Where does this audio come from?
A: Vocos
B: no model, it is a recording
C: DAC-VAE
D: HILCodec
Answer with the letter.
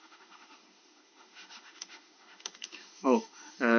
C